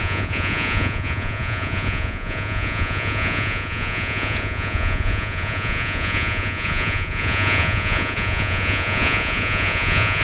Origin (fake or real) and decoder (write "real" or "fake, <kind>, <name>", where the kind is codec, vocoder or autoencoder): fake, vocoder, Vocos